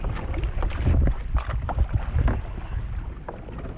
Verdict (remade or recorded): recorded